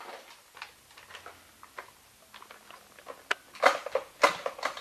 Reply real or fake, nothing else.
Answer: real